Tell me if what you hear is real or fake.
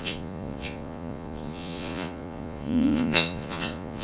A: fake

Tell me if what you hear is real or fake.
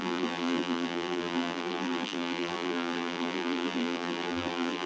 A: fake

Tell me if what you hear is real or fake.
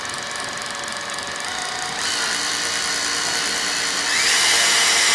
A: real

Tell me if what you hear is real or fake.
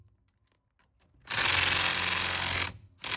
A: real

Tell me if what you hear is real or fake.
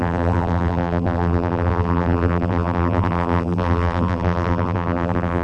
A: fake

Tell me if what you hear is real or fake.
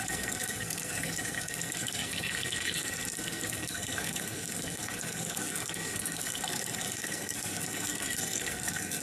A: fake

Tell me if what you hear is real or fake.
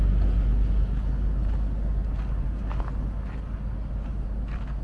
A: real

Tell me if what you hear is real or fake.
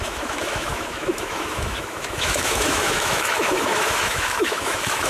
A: fake